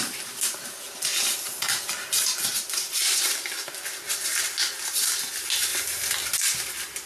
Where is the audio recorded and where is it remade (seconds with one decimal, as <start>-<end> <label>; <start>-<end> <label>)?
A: 0.0-7.1 recorded